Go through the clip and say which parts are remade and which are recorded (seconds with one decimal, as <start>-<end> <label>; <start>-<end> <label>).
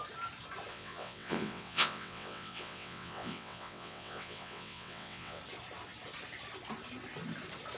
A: 0.0-0.7 recorded; 0.7-5.4 remade; 5.4-7.8 recorded